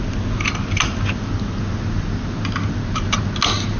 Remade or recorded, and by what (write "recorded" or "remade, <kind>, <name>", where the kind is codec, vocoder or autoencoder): recorded